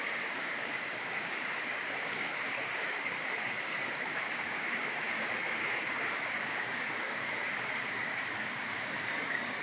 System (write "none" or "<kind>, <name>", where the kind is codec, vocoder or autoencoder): codec, DAC